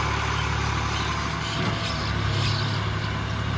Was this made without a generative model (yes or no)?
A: yes